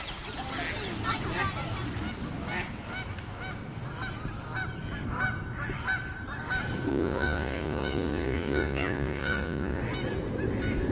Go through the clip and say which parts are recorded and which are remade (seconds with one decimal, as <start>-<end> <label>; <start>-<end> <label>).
0.0-6.9 recorded; 6.9-9.8 remade; 9.8-10.9 recorded